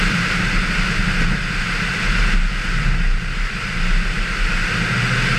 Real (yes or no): yes